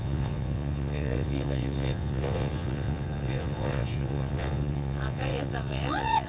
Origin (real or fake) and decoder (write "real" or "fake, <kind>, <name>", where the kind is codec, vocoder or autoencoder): fake, vocoder, WaveNeXt